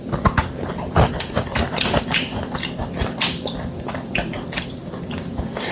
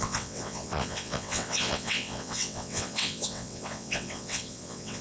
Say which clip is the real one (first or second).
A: first